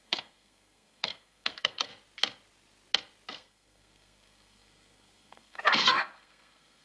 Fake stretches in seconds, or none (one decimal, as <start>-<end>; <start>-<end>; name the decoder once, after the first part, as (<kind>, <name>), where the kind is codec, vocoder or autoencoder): 0.0-1.9 (codec, SNAC); 3.3-6.8